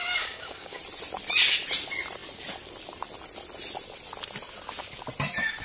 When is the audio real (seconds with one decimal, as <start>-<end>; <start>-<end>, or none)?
0.8-5.6